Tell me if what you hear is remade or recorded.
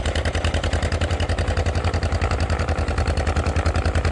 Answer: recorded